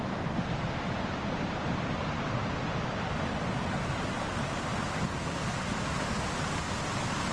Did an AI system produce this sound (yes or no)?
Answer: no